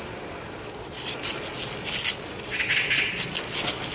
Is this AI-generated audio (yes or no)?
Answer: no